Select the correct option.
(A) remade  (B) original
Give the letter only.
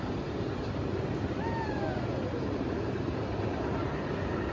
A